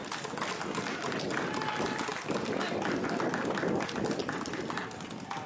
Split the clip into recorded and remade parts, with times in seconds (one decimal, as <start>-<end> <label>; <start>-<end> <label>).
0.0-5.5 recorded